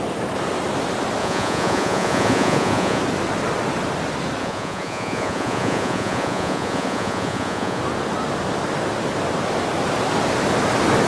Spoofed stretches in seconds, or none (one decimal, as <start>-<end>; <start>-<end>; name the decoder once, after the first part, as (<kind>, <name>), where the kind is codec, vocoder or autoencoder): 1.2-3.0 (vocoder, Vocos); 4.4-7.8